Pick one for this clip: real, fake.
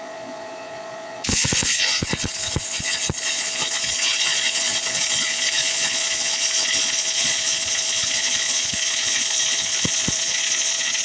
fake